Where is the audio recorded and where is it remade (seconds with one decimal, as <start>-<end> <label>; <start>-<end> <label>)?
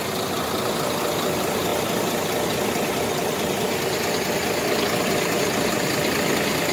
0.0-6.7 recorded